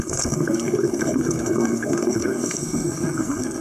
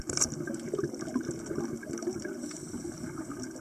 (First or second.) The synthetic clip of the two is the first